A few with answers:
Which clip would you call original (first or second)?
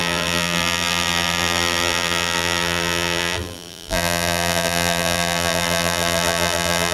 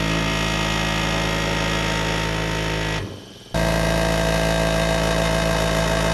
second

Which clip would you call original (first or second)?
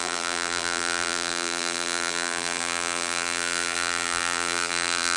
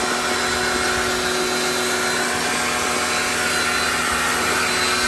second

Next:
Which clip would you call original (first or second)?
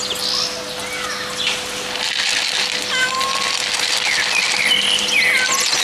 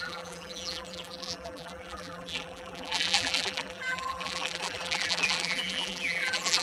first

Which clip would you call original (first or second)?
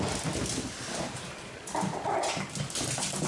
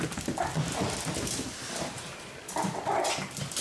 second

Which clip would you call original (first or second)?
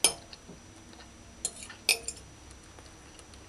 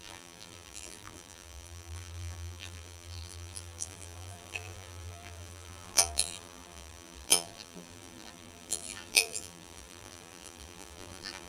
first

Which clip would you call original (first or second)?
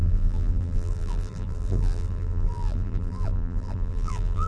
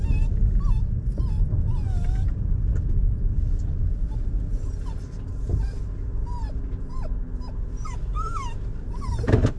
second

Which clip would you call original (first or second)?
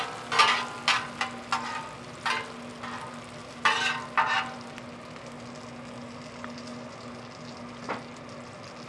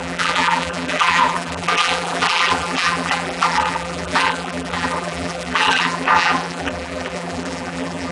first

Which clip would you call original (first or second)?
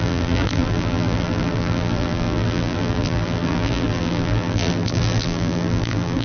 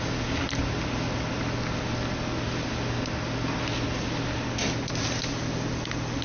second